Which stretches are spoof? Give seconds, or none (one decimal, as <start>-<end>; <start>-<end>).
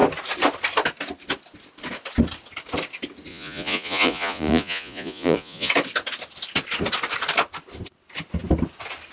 3.3-5.7